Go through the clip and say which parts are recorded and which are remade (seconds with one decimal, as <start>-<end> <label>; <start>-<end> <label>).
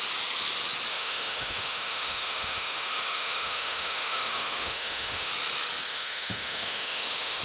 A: 0.0-0.9 recorded; 0.9-5.3 remade; 5.3-5.9 recorded; 5.9-7.4 remade